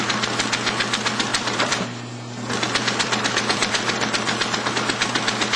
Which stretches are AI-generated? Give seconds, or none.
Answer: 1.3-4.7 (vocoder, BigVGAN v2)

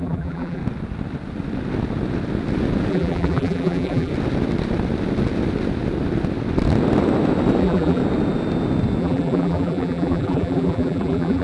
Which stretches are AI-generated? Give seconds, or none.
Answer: 0.0-0.6 (vocoder, BigVGAN v2); 2.9-4.1; 7.6-8.0; 9.0-11.4